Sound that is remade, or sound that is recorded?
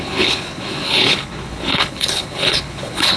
remade